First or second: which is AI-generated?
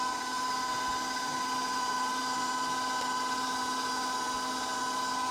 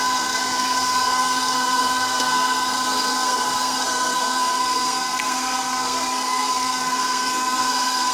second